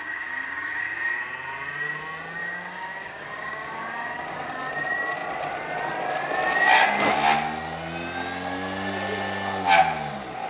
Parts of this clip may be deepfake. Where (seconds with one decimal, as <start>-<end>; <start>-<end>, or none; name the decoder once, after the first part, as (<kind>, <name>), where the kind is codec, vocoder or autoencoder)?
0.0-1.1 (codec, DAC); 2.4-4.7

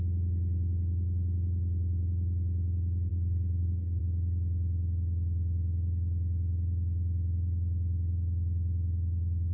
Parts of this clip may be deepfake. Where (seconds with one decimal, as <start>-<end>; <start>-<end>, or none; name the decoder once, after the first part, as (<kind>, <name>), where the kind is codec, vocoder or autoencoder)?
3.1-4.0 (codec, DAC)

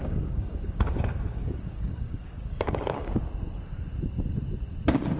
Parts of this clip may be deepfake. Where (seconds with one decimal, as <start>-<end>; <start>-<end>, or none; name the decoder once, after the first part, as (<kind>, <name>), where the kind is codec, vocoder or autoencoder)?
0.0-3.1 (codec, DAC)

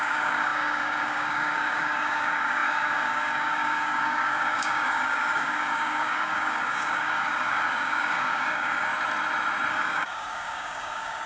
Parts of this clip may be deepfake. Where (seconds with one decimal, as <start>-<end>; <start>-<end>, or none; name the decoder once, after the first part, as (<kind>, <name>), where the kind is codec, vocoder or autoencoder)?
0.0-8.9 (codec, DAC); 9.7-11.3

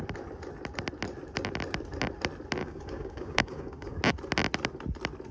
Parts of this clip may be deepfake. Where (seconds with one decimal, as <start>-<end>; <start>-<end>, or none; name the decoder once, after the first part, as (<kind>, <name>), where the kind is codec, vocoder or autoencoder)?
2.6-4.0 (codec, DAC)